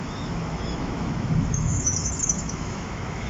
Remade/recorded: remade